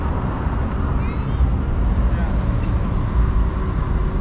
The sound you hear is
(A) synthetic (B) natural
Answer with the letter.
B